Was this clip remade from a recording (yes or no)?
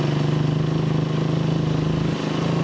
no